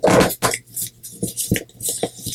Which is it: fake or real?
real